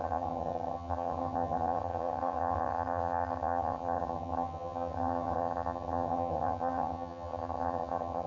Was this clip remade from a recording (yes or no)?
yes